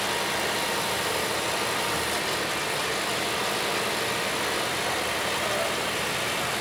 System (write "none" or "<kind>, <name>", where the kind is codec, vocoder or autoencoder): none